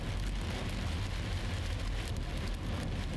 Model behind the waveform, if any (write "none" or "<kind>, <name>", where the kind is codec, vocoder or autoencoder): none